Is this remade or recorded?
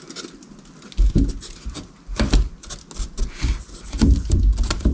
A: recorded